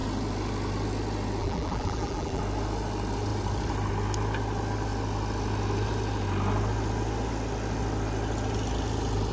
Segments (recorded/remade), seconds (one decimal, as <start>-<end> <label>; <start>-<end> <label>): 0.0-1.4 recorded; 1.4-2.4 remade; 2.4-9.3 recorded